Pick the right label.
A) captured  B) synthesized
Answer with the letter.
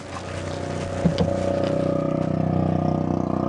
A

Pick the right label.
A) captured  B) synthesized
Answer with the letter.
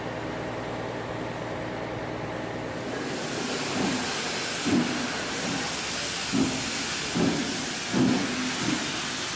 A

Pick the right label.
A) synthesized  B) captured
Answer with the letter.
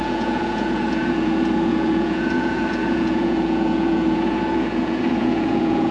A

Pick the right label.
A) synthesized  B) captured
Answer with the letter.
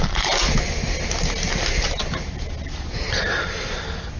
B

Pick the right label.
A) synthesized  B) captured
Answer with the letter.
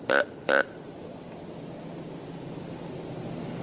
B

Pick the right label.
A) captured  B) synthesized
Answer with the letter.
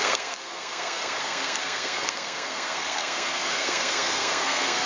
B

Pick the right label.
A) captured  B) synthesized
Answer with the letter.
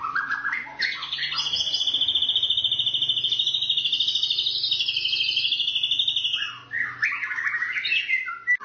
A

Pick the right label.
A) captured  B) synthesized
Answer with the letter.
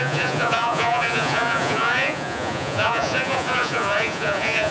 B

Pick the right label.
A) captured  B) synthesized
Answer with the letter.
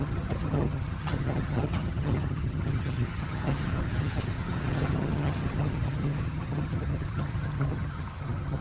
B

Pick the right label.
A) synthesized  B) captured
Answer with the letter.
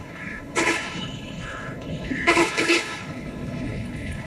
A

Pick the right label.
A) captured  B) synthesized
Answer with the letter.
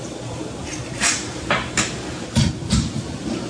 B